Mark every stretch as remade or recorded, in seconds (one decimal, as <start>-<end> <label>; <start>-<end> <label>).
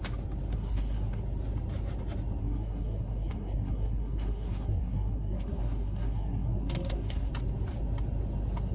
0.0-0.5 recorded; 0.5-1.2 remade; 1.2-2.4 recorded; 2.4-7.3 remade; 7.3-8.7 recorded